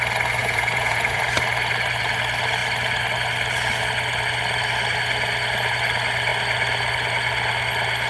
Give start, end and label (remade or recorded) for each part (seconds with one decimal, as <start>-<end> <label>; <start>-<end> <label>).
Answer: 0.0-0.4 recorded; 0.4-1.2 remade; 1.2-8.1 recorded